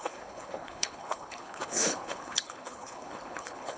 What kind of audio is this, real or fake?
fake